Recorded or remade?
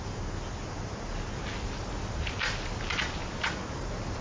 recorded